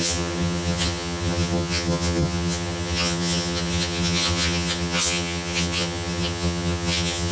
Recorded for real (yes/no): no